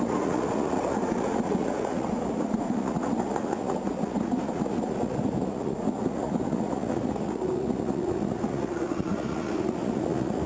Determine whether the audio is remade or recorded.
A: remade